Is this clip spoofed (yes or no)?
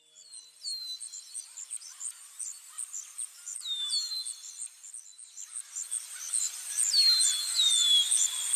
no